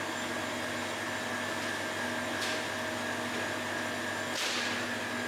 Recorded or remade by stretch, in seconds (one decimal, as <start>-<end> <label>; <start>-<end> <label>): 0.0-5.3 recorded